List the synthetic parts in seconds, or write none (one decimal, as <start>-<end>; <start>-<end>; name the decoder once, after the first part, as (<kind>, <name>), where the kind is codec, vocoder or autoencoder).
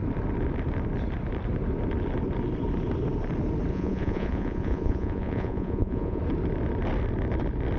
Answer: 3.7-6.2 (vocoder, Vocos)